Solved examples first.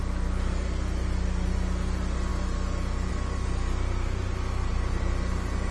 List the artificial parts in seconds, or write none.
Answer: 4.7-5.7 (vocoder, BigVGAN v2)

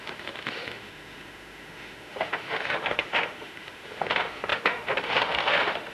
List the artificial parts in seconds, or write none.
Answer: 0.0-5.9 (autoencoder, DAC-VAE)

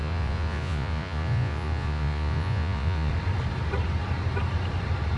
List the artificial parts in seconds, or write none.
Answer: 0.0-3.1 (vocoder, Vocos)

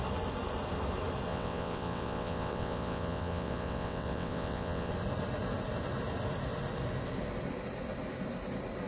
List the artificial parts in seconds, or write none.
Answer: 1.3-4.9 (vocoder, WaveNeXt)

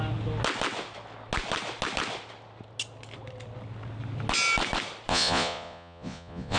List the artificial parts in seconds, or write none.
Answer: 5.1-6.6 (vocoder, Vocos)

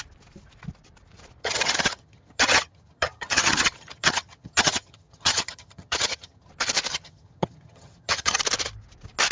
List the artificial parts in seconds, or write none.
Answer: 1.4-6.5 (vocoder, HiFi-GAN); 6.9-8.4

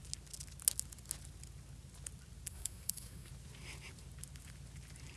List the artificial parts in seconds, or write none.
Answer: 2.5-3.3 (codec, SNAC)

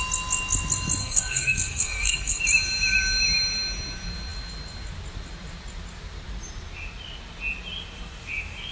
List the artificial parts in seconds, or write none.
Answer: 1.0-2.4 (codec, SNAC)